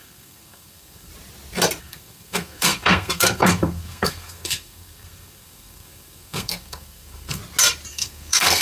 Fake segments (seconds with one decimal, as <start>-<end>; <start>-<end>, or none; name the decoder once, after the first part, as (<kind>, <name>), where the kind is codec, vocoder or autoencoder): 0.0-1.1 (codec, SNAC); 1.8-7.4; 7.9-8.6